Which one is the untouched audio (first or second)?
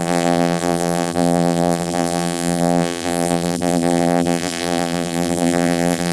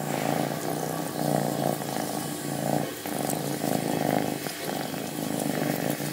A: second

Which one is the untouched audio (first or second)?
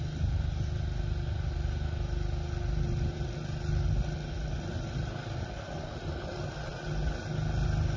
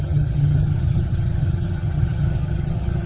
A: first